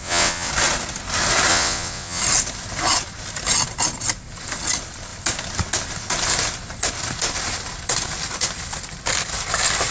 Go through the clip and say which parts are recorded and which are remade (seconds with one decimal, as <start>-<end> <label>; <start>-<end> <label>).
0.0-0.5 remade; 0.5-1.5 recorded; 1.5-2.2 remade; 2.2-9.9 recorded